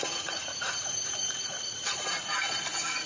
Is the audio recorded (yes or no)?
yes